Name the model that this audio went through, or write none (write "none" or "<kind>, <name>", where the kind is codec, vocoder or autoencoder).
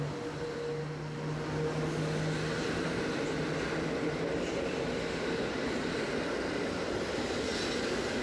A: none